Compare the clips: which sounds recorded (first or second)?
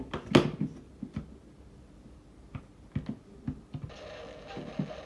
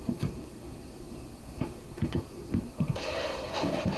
first